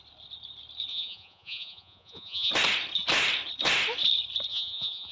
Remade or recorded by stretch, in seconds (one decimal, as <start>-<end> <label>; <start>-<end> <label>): 0.0-0.9 recorded; 0.9-2.5 remade; 2.5-4.5 recorded; 4.5-5.1 remade